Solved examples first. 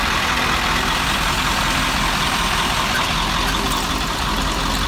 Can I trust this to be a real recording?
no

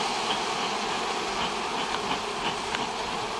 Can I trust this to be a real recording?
yes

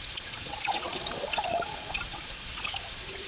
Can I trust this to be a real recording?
no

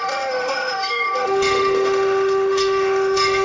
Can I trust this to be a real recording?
no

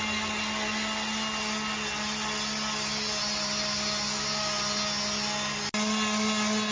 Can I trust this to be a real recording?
yes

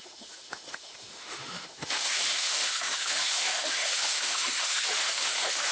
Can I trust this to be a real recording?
no